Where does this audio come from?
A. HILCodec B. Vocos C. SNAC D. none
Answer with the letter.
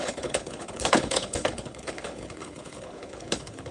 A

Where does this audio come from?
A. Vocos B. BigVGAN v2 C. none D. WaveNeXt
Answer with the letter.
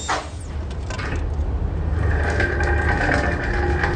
C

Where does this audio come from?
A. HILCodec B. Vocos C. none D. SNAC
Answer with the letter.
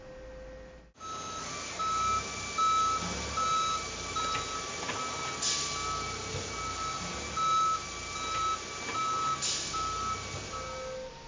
C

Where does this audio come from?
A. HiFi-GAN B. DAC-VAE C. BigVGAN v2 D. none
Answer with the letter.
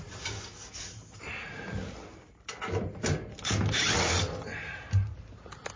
D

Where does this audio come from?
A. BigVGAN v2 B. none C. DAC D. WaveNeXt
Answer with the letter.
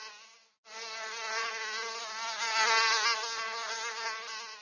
B